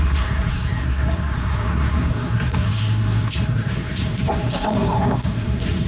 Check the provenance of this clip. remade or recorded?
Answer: remade